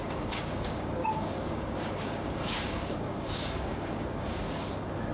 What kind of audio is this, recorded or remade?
remade